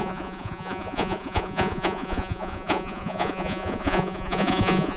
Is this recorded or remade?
remade